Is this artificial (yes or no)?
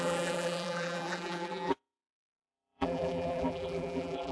yes